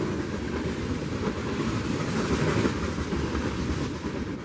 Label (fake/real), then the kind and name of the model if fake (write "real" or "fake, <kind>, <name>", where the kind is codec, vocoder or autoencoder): real